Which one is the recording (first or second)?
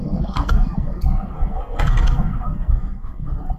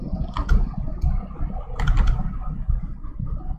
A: second